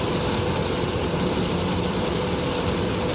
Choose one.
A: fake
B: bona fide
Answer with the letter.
B